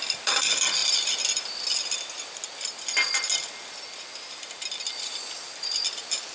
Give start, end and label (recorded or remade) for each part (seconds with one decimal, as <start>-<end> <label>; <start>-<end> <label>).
0.0-6.3 recorded